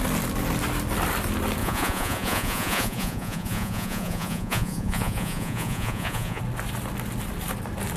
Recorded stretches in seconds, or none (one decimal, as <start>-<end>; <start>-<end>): 0.0-1.6; 6.4-8.0